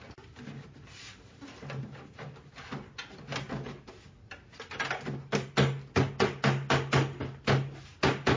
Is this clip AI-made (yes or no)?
no